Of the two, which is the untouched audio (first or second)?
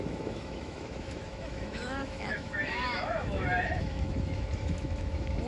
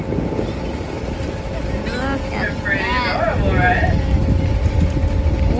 second